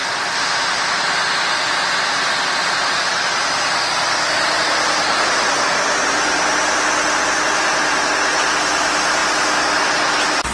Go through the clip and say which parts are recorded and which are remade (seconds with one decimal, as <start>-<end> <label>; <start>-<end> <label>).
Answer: 0.0-10.5 recorded